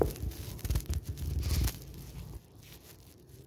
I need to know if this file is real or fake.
fake